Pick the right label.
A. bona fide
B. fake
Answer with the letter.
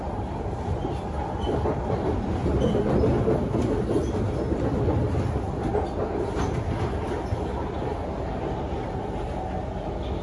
A